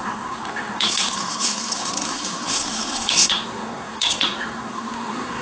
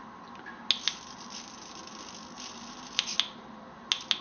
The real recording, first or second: second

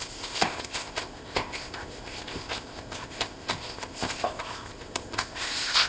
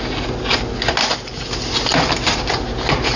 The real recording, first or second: second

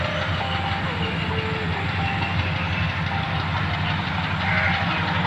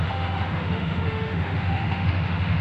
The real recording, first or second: first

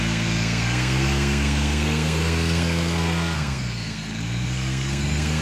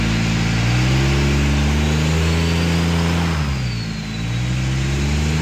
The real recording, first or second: second